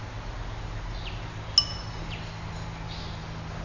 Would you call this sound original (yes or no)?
yes